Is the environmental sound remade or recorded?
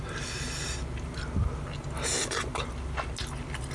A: recorded